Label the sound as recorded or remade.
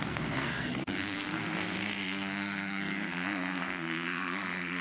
remade